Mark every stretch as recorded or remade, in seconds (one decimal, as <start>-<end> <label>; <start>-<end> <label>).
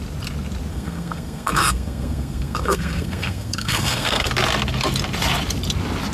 0.0-0.7 recorded; 0.7-4.3 remade; 4.3-6.1 recorded